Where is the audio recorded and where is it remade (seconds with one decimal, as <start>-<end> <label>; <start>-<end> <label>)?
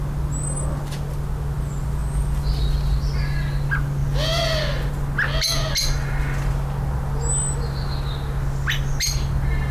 0.0-9.7 recorded